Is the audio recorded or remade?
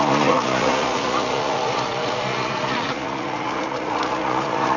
remade